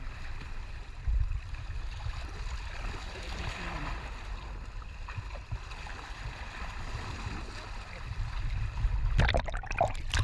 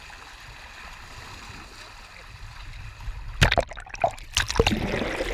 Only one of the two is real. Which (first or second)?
second